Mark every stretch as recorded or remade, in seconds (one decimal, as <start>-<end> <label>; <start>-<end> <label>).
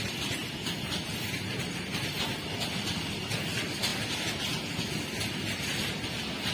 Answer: 0.0-0.4 recorded; 0.4-3.2 remade; 3.2-3.9 recorded; 3.9-4.8 remade; 4.8-6.5 recorded